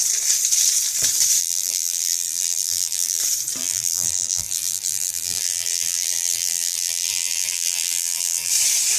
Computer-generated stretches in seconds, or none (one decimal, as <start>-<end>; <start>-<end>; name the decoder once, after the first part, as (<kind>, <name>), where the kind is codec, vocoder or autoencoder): 1.4-3.2 (vocoder, BigVGAN v2); 3.6-8.5